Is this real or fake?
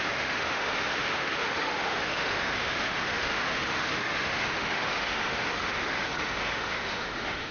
fake